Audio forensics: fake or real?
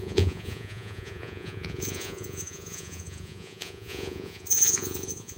fake